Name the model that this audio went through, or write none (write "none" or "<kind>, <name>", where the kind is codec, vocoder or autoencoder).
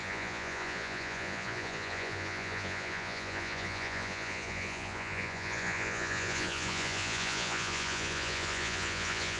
vocoder, Vocos